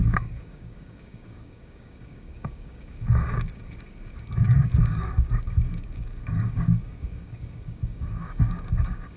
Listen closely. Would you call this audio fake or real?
fake